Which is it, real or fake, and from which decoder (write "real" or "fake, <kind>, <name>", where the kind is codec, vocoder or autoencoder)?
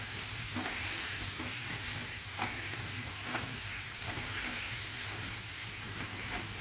fake, codec, DAC